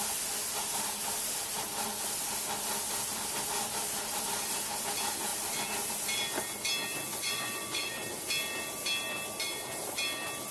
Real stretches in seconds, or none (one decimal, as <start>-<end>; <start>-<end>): 0.0-7.1; 7.9-10.5

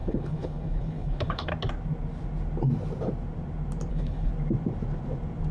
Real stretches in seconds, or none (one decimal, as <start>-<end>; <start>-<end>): 1.5-3.9; 4.3-5.5

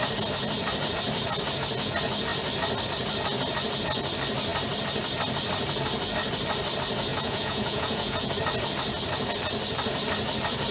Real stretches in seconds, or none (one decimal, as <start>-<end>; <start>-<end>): 0.0-7.1; 8.3-10.7

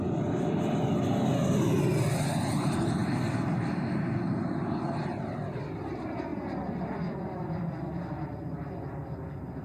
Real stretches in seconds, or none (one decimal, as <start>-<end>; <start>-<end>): 0.0-9.6